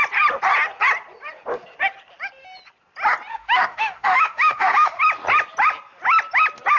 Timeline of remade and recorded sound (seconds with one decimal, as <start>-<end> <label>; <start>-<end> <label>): 0.0-3.3 recorded; 3.3-5.0 remade; 5.0-6.8 recorded